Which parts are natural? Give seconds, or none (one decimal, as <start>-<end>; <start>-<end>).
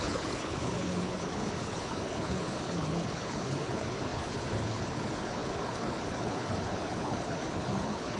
none